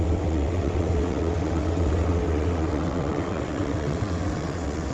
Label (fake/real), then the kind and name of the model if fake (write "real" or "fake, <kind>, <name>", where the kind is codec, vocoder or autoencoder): fake, vocoder, WaveNeXt